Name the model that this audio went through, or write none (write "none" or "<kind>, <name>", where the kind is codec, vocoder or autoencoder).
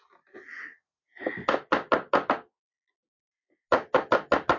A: none